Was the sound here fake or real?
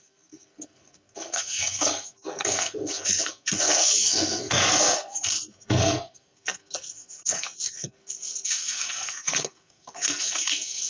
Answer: fake